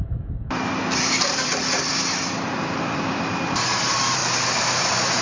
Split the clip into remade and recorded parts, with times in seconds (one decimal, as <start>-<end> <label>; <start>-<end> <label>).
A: 0.0-4.2 remade; 4.2-4.8 recorded; 4.8-5.2 remade